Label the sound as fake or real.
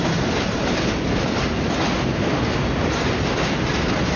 real